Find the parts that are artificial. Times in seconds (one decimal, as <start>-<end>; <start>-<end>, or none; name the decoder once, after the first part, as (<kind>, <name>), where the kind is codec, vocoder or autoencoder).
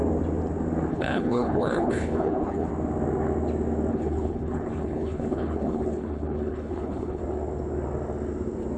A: 0.9-2.7 (codec, HILCodec); 3.9-7.2